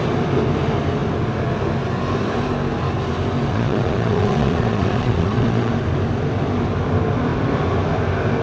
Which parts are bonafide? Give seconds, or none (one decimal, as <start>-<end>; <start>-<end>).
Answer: 0.0-3.5; 5.7-8.4